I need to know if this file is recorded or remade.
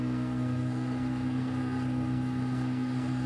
remade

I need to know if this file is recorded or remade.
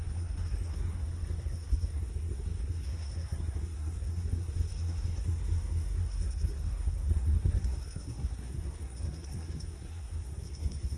remade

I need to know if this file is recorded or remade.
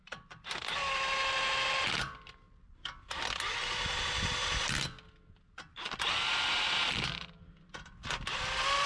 recorded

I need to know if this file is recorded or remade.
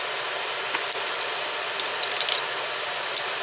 recorded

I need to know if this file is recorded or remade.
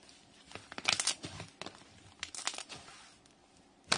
recorded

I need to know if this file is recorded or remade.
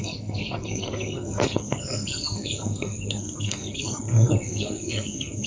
remade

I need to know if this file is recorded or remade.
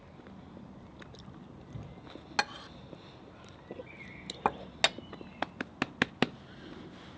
recorded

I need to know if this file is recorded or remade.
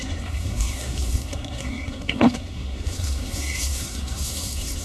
remade